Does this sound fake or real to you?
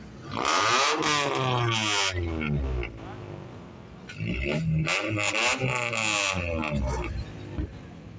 real